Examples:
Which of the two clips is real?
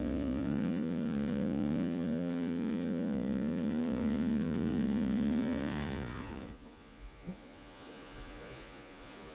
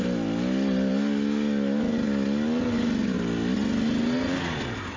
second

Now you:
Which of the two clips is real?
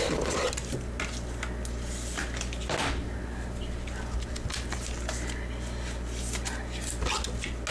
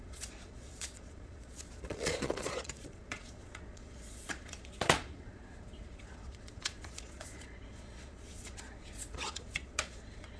first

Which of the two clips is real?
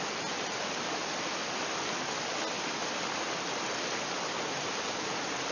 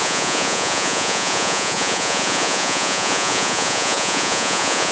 first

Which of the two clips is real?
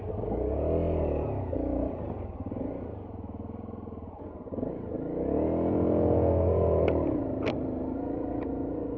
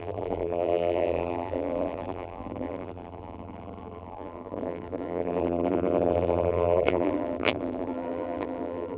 first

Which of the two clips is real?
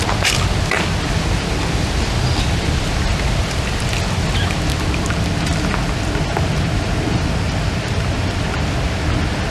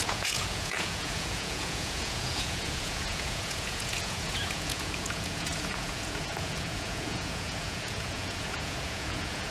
first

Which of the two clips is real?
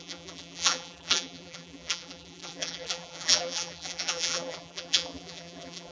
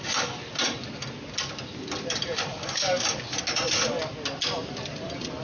second